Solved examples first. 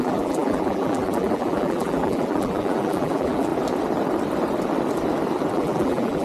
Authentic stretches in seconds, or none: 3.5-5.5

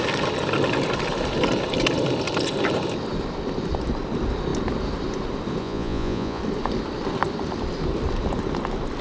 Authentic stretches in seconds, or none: 0.0-5.6; 6.4-9.0

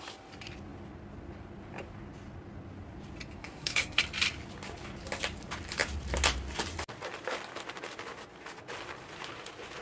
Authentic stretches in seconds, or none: 0.0-3.4; 4.0-9.8

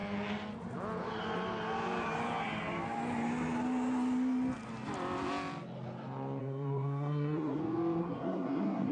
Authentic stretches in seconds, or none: 0.0-6.4; 7.6-8.0

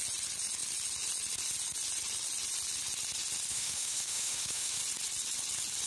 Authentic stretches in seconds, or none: 0.0-3.5; 4.8-5.9

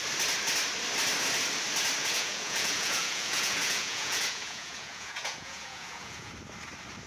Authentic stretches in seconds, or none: 0.0-2.0; 6.3-7.1

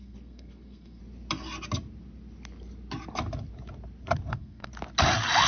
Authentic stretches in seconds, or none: 1.0-4.3; 4.7-5.5

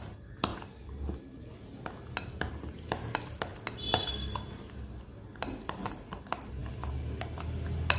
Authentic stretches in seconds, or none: 0.0-8.0